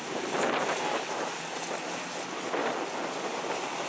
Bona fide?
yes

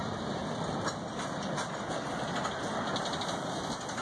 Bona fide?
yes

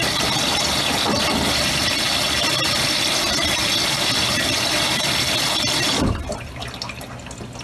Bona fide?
yes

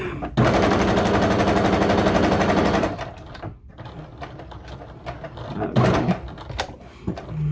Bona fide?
yes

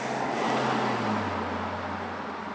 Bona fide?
yes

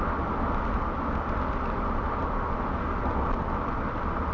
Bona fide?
yes